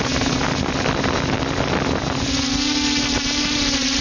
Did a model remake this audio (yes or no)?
no